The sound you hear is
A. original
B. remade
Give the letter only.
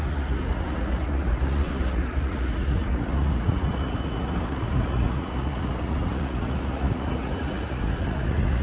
B